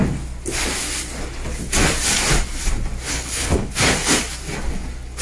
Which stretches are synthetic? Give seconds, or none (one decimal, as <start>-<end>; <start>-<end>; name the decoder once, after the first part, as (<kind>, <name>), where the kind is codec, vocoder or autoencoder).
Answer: 3.1-3.7 (codec, HILCodec)